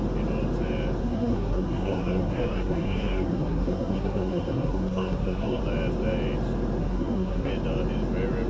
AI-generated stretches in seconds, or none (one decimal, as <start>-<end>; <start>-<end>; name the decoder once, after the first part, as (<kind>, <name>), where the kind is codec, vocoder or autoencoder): 1.0-5.6 (codec, SNAC); 6.8-7.5